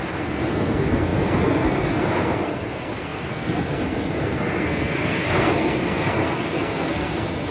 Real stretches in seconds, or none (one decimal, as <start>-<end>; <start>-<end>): none

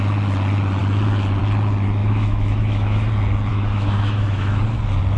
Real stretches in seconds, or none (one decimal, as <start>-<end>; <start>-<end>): 0.0-2.0; 3.1-3.5; 4.6-5.2

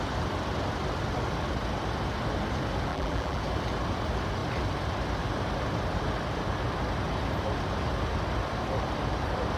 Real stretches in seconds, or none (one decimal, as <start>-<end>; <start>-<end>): 0.0-2.9; 3.4-9.6

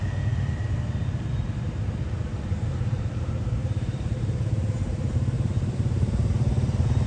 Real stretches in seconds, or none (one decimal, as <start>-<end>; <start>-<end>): 0.0-2.3; 6.3-7.1